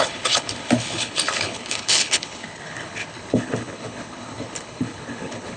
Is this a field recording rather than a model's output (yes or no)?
no